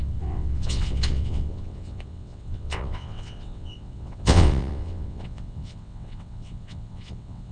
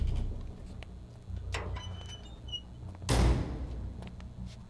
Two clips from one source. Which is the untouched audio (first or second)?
second